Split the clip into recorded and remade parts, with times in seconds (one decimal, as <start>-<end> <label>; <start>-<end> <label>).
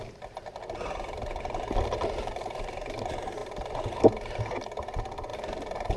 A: 0.0-3.4 recorded; 3.4-4.0 remade; 4.0-5.3 recorded; 5.3-6.0 remade